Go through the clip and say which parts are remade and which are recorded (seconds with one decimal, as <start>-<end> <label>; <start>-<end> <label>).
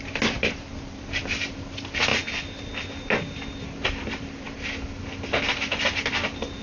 0.0-2.1 remade; 2.1-6.1 recorded; 6.1-6.6 remade